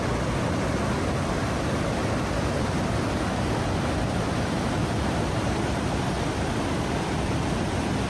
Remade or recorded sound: recorded